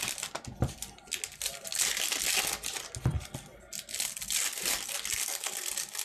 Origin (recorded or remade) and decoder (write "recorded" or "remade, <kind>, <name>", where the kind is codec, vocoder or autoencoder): recorded